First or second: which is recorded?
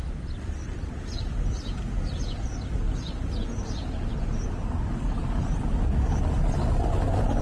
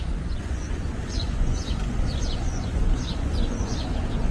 first